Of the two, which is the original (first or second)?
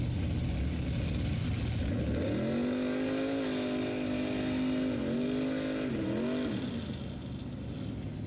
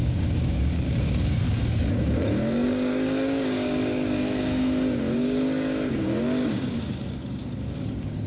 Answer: first